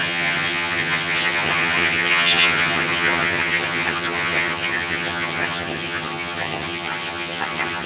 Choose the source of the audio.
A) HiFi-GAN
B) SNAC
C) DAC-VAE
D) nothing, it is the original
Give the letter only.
A